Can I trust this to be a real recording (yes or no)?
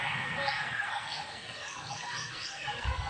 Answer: no